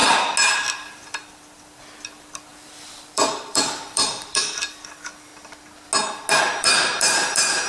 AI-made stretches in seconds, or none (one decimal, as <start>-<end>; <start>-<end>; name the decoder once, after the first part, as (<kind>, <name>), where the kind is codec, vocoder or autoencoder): 0.5-5.3 (vocoder, BigVGAN v2); 6.3-7.7